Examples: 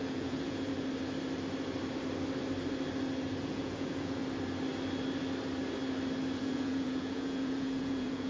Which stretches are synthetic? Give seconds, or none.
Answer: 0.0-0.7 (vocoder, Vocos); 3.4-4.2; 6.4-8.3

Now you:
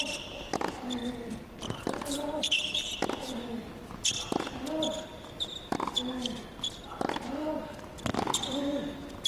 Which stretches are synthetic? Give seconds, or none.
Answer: 1.0-3.1 (vocoder, BigVGAN v2)

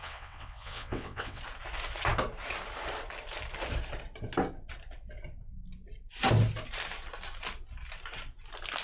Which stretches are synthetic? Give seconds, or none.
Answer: 0.0-1.4 (vocoder, WaveNeXt)

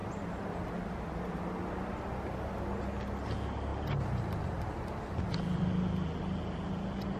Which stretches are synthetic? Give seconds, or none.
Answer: none